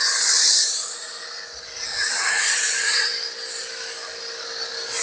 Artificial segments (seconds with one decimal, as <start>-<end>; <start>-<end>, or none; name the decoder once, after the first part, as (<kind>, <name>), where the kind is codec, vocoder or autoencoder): 0.6-1.1 (vocoder, Vocos); 1.9-3.1